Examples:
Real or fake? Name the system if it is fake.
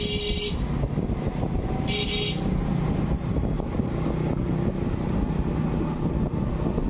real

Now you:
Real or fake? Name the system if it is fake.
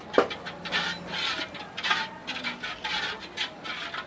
real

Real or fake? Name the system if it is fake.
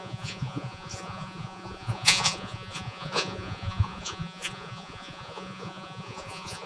fake, vocoder, Vocos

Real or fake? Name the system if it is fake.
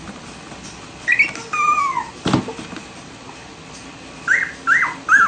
real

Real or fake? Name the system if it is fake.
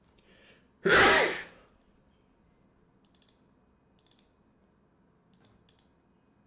real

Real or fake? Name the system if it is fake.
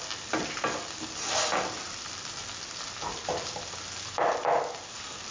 real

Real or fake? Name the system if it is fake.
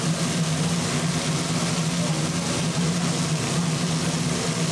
real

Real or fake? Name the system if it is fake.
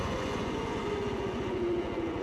fake, vocoder, Vocos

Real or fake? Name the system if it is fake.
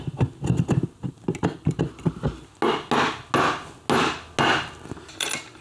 real